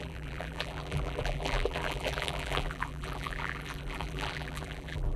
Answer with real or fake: fake